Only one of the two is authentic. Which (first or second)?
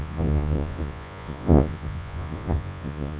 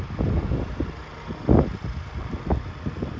second